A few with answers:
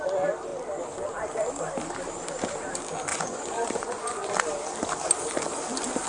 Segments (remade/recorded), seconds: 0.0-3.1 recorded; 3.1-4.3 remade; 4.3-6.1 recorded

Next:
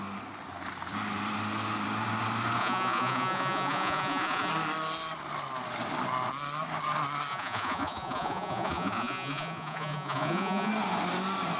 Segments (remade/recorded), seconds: 0.0-2.6 recorded; 2.6-4.5 remade; 4.5-7.3 recorded; 7.3-10.7 remade; 10.7-11.6 recorded

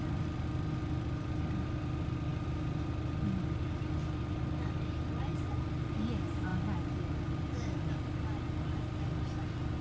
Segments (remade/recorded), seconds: 0.0-9.8 recorded

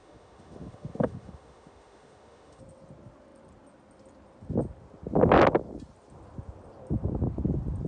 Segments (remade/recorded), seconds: 0.0-2.6 remade; 2.6-7.9 recorded

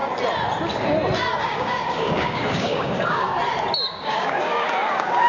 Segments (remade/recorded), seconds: 0.0-1.4 recorded; 1.4-3.3 remade; 3.3-3.9 recorded; 3.9-5.3 remade

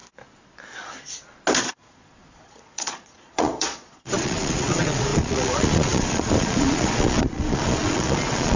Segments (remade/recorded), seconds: 0.0-1.7 recorded; 1.7-8.6 remade

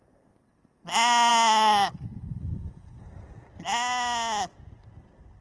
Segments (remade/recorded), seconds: 0.0-5.4 recorded